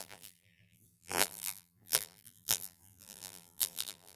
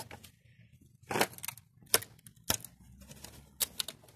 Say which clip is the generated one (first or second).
first